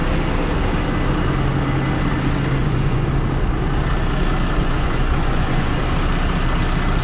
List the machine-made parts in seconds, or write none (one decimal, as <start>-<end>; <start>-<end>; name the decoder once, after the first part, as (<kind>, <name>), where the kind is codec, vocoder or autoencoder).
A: 2.6-3.1 (vocoder, Vocos); 4.6-5.8